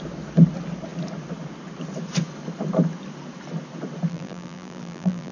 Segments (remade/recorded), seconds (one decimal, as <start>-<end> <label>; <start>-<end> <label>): 0.0-4.1 recorded; 4.1-5.3 remade

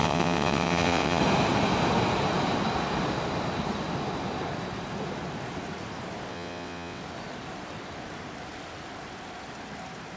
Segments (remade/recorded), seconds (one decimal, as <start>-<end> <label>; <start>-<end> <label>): 0.0-1.2 remade; 1.2-6.3 recorded; 6.3-7.0 remade; 7.0-10.2 recorded

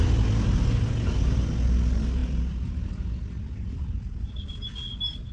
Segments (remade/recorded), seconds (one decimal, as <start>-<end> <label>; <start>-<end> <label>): 0.0-5.3 recorded

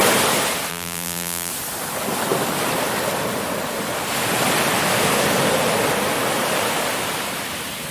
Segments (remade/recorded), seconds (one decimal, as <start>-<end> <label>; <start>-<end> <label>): 0.0-0.7 recorded; 0.7-1.5 remade; 1.5-7.9 recorded